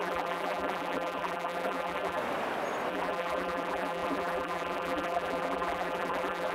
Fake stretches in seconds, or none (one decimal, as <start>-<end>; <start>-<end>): 0.0-2.2; 2.9-6.5